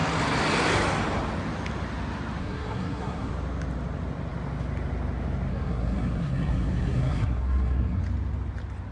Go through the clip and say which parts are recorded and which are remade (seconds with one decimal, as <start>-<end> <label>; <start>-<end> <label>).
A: 0.0-2.4 recorded; 2.4-3.3 remade; 3.3-5.5 recorded; 5.5-8.0 remade; 8.0-8.9 recorded